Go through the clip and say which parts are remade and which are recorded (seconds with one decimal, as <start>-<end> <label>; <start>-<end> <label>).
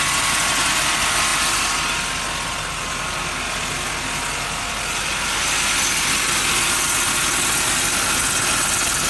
0.0-9.1 recorded